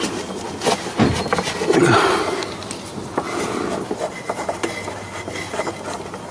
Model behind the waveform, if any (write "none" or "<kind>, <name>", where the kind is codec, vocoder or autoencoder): none